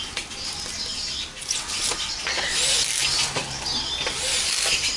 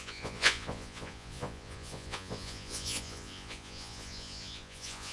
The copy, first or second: second